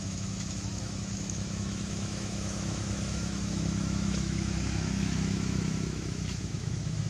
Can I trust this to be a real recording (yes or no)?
no